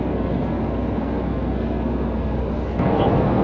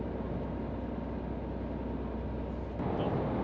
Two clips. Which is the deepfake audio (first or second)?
first